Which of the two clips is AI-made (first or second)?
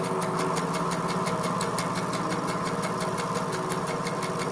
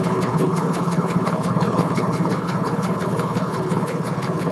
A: second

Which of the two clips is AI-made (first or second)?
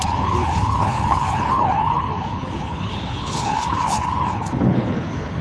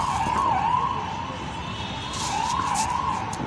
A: first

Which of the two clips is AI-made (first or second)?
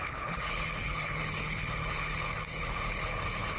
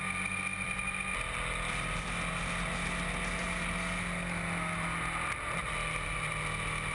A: first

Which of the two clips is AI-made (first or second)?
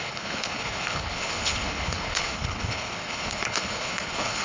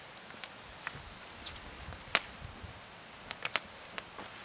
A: first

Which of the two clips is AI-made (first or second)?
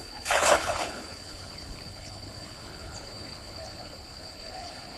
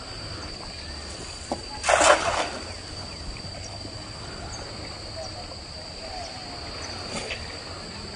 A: first